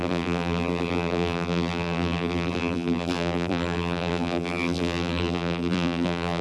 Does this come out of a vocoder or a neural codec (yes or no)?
yes